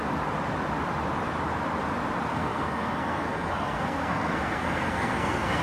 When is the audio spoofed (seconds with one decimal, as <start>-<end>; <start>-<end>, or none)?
2.3-5.6